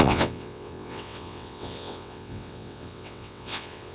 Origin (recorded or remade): remade